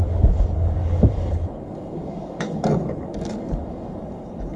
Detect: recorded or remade remade